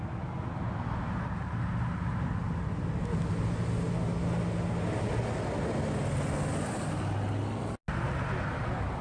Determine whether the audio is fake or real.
real